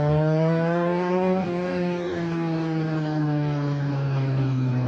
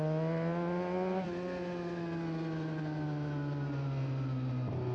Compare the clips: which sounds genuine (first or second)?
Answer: second